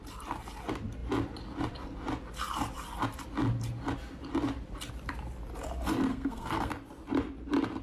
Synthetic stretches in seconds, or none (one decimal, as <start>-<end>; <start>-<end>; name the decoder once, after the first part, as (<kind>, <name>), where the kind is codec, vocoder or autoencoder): 6.1-6.7 (codec, SNAC)